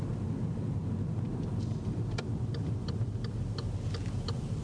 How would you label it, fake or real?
real